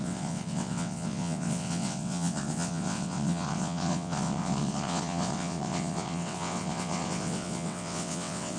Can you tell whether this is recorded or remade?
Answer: remade